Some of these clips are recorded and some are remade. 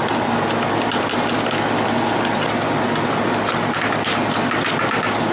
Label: recorded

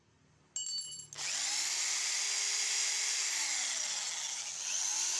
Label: recorded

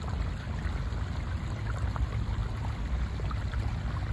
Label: recorded